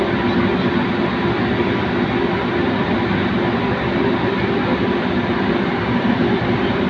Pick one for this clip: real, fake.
real